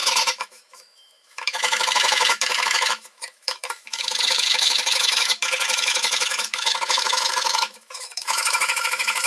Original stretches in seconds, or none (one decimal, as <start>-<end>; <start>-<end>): none